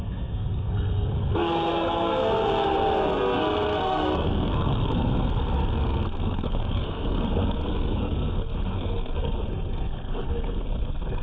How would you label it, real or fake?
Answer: fake